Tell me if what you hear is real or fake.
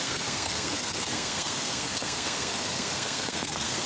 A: fake